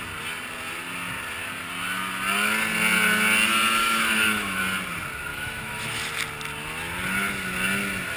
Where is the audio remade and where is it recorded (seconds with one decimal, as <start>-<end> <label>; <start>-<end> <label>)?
0.0-3.8 recorded; 3.8-4.6 remade; 4.6-5.3 recorded; 5.3-6.0 remade; 6.0-8.2 recorded